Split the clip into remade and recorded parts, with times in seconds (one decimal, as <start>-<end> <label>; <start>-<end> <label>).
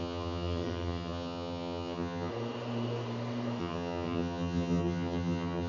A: 0.0-2.3 remade; 2.3-3.6 recorded; 3.6-5.7 remade